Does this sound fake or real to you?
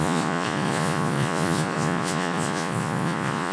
fake